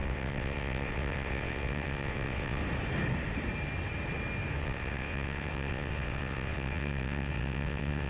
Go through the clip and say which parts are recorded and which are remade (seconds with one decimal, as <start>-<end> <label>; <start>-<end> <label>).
0.0-2.6 remade; 2.6-4.6 recorded; 4.6-8.1 remade

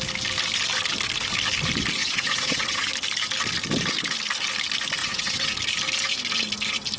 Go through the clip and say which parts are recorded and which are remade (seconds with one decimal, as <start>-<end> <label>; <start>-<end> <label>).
0.0-2.0 recorded; 2.0-2.9 remade; 2.9-5.0 recorded; 5.0-5.5 remade; 5.5-7.0 recorded

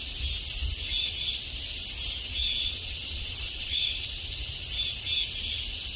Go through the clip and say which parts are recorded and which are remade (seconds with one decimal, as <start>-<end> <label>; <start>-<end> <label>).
0.0-2.3 recorded; 2.3-4.2 remade; 4.2-6.0 recorded

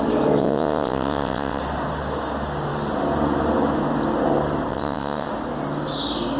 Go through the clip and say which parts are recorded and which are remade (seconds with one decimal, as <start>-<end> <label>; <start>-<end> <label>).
0.0-0.4 recorded; 0.4-1.6 remade; 1.6-4.7 recorded; 4.7-5.3 remade; 5.3-6.4 recorded

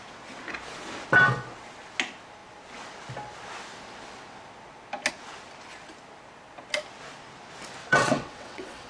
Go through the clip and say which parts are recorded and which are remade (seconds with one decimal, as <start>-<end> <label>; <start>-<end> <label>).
0.0-7.8 recorded; 7.8-8.9 remade